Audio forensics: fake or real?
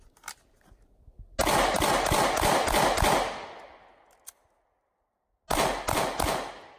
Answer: real